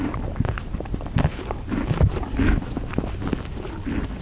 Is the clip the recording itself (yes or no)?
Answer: yes